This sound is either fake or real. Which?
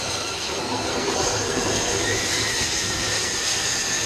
fake